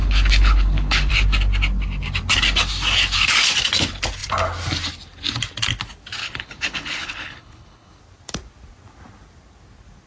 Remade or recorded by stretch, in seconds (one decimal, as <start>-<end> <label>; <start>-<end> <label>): 0.0-1.1 remade; 1.1-6.2 recorded; 6.2-8.0 remade; 8.0-10.1 recorded